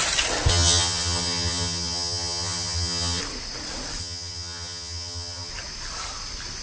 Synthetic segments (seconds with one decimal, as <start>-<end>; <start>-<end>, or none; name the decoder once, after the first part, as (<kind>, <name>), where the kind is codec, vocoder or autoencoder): 0.5-3.2 (vocoder, HiFi-GAN); 4.0-5.5